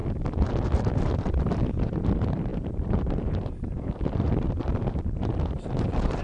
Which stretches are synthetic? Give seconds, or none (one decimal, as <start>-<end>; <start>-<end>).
1.0-6.2